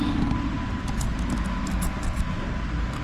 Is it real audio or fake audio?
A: real